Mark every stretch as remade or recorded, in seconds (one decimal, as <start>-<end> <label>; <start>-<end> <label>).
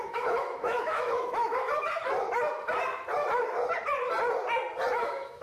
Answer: 0.0-1.7 remade; 1.7-4.9 recorded; 4.9-5.4 remade